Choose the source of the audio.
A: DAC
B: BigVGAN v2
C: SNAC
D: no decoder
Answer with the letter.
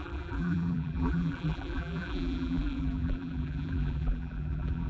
B